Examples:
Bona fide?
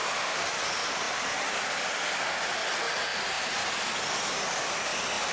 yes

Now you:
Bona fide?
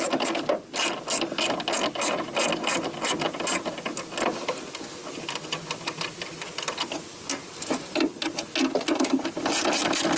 yes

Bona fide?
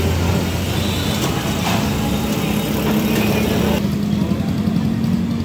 yes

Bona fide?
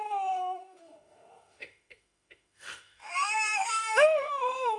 no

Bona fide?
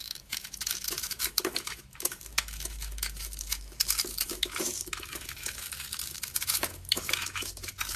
no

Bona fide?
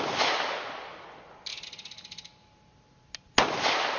yes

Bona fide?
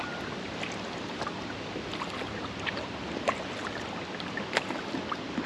yes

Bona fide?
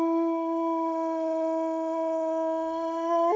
no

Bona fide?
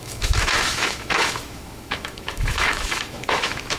no